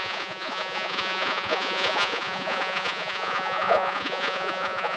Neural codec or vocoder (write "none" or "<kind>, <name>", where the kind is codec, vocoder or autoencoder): vocoder, Vocos